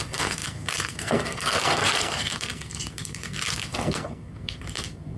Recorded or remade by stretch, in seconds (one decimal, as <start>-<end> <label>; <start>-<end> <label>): 0.0-5.2 remade